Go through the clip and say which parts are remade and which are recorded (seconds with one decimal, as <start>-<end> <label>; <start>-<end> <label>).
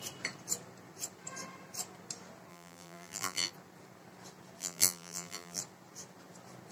0.0-2.5 recorded; 2.5-3.5 remade; 3.5-4.6 recorded; 4.6-5.6 remade; 5.6-6.7 recorded